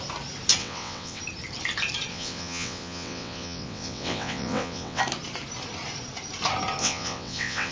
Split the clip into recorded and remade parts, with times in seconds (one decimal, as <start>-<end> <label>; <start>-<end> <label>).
0.0-0.6 recorded; 0.6-1.2 remade; 1.2-2.1 recorded; 2.1-5.0 remade; 5.0-6.8 recorded; 6.8-7.7 remade